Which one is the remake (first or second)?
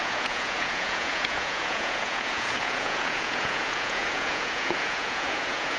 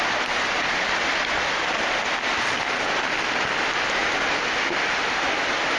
first